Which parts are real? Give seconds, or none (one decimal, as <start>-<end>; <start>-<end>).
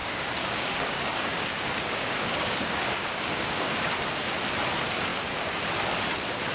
3.9-6.5